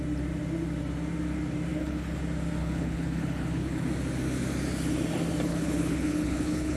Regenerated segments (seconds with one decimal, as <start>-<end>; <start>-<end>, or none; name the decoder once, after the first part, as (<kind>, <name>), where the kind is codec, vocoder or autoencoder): 1.7-2.2 (codec, HILCodec); 2.6-3.9; 5.5-6.8